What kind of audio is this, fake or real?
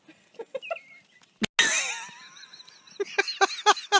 real